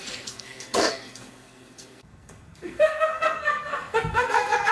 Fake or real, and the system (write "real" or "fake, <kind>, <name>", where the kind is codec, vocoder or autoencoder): fake, codec, SNAC